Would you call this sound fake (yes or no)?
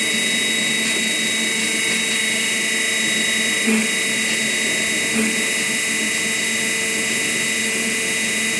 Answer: no